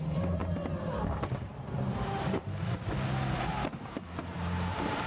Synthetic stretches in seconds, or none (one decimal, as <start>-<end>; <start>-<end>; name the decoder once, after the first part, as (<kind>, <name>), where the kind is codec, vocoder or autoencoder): 0.0-0.4 (vocoder, BigVGAN v2); 3.4-5.1